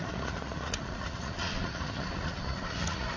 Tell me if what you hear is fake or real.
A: fake